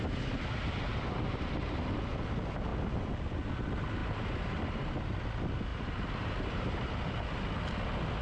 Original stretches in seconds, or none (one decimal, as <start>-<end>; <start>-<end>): 0.0-0.9; 1.5-4.0; 5.2-5.7; 6.9-8.2